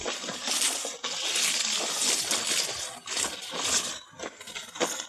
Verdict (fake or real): real